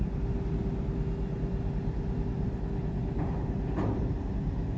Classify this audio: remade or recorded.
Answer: recorded